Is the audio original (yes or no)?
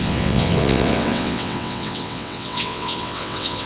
no